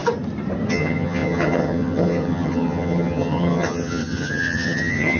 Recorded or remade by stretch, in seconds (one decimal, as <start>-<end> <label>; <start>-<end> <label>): 0.0-0.7 recorded; 0.7-5.2 remade